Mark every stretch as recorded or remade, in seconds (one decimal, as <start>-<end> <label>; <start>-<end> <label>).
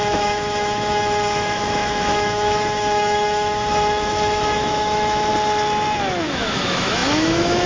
0.0-5.3 remade; 5.3-6.2 recorded; 6.2-7.7 remade